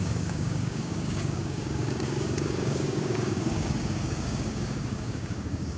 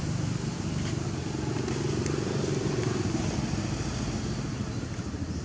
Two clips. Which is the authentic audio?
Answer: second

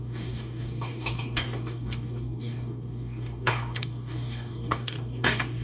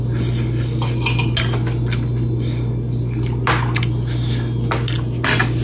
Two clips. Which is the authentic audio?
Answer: second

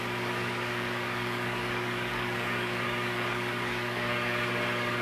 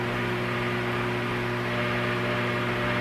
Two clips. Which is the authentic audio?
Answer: second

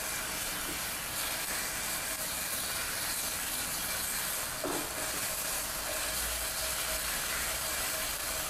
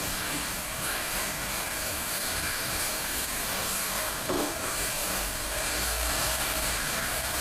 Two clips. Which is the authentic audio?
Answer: first